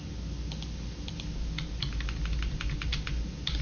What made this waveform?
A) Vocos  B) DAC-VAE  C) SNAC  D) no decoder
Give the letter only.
D